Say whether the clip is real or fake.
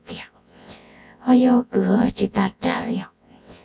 fake